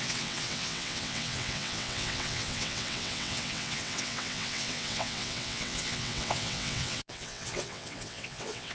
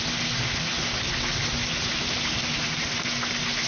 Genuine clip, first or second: second